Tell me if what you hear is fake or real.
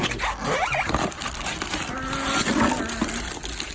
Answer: real